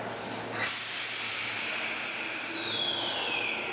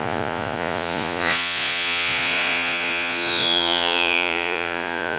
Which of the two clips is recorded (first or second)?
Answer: first